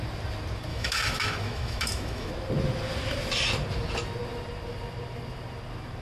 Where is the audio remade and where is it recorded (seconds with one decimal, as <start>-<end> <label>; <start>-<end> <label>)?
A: 0.0-0.7 recorded; 0.7-2.3 remade; 2.3-6.0 recorded